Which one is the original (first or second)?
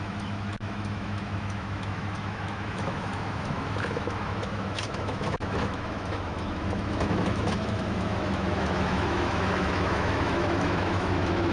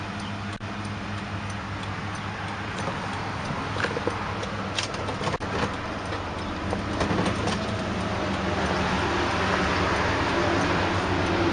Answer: second